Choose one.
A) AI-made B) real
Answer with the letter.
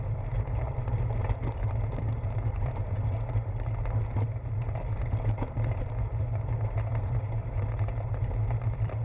A